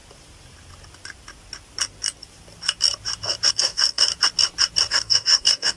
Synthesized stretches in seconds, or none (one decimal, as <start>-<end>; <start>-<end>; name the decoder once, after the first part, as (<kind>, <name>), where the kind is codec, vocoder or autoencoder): 3.5-4.1 (codec, DAC); 4.9-5.8